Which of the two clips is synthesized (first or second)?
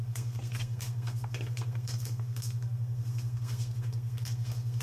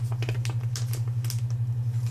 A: first